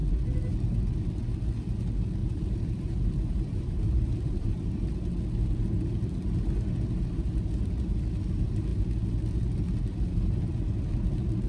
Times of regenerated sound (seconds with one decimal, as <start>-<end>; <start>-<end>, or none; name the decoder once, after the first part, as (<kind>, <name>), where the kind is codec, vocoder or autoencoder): 2.2-4.6 (vocoder, BigVGAN v2)